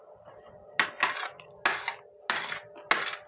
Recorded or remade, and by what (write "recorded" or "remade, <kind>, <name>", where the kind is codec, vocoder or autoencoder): recorded